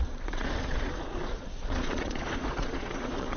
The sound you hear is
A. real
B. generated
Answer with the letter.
B